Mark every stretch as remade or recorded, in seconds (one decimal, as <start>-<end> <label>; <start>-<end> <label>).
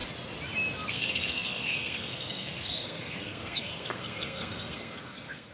0.0-0.9 recorded; 0.9-5.5 remade